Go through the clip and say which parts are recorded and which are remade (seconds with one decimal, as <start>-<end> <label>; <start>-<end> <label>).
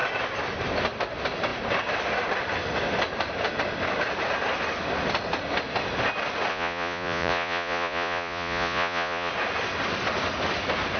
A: 0.0-6.5 recorded; 6.5-9.3 remade; 9.3-11.0 recorded